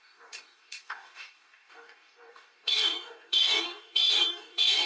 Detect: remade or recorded remade